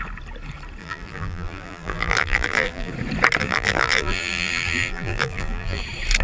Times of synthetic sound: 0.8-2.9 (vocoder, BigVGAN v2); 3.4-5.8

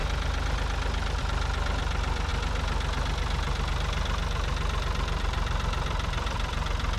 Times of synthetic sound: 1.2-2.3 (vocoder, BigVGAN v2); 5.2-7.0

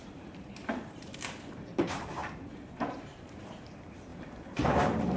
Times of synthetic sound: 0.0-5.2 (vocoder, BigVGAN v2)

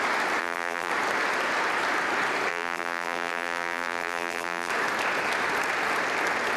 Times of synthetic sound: 0.4-0.9 (vocoder, BigVGAN v2); 2.5-4.7

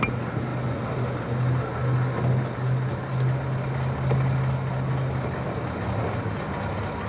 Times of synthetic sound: none